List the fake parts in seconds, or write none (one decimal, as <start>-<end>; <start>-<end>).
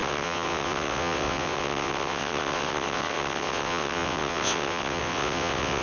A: 0.0-5.8